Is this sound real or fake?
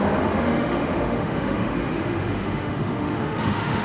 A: fake